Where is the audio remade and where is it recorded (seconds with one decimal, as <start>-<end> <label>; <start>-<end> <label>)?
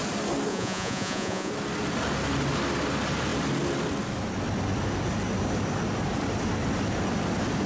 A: 0.0-0.5 recorded; 0.5-1.5 remade; 1.5-7.7 recorded